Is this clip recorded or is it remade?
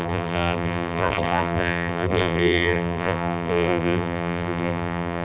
remade